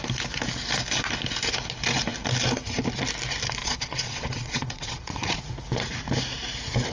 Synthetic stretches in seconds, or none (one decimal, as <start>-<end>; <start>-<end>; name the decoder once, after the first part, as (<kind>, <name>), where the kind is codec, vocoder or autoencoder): 3.6-5.4 (vocoder, Vocos)